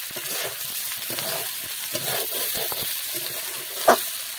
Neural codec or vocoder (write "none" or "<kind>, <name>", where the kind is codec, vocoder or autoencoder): none